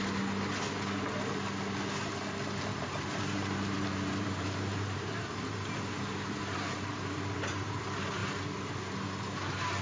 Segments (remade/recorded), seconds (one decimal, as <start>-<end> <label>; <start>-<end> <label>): 0.0-2.7 recorded; 2.7-7.8 remade; 7.8-9.8 recorded